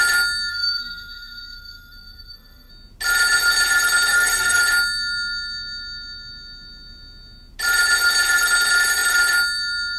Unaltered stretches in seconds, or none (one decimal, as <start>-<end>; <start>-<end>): 0.0-0.5; 2.7-4.1; 4.6-10.0

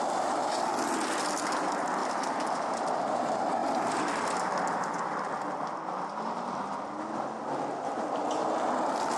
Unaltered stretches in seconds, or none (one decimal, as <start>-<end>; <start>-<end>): 0.0-2.0; 2.8-3.6; 5.3-9.2

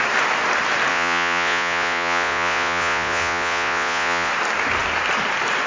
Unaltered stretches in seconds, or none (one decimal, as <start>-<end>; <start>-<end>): 0.0-0.9; 4.3-5.7

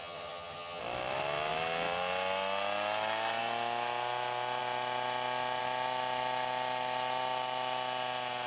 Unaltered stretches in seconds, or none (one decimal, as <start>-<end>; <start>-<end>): 0.8-8.5